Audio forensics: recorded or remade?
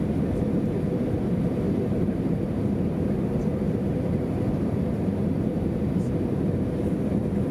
remade